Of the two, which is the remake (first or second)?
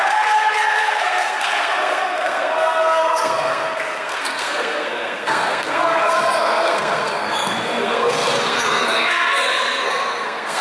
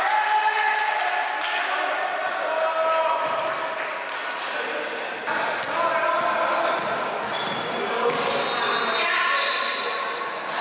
first